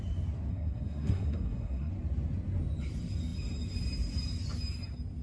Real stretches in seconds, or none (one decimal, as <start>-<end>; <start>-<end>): 0.0-0.5; 1.9-5.2